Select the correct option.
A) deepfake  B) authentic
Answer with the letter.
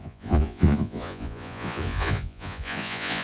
A